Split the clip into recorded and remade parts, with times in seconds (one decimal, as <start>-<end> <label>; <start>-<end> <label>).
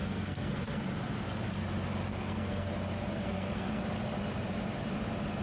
0.0-0.8 remade; 0.8-2.1 recorded; 2.1-2.7 remade; 2.7-3.1 recorded; 3.1-3.8 remade; 3.8-5.4 recorded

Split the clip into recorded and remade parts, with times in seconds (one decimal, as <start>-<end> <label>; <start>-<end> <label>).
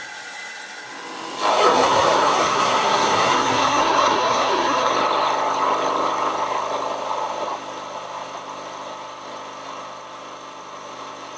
0.0-1.5 recorded; 1.5-4.9 remade; 4.9-11.4 recorded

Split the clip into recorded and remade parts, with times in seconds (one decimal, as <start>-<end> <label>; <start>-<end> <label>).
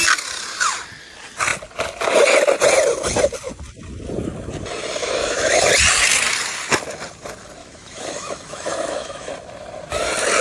0.0-5.0 recorded; 5.0-5.6 remade; 5.6-7.6 recorded; 7.6-9.3 remade; 9.3-10.4 recorded